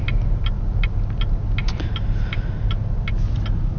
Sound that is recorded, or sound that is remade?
recorded